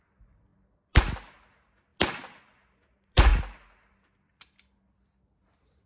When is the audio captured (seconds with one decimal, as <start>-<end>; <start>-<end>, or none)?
0.0-5.9